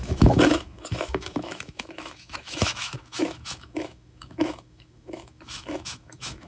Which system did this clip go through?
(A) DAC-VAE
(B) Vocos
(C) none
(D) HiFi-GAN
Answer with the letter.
A